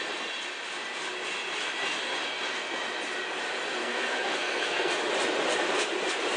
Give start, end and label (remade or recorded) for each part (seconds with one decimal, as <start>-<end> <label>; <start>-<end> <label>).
0.0-3.8 recorded; 3.8-4.9 remade; 4.9-6.4 recorded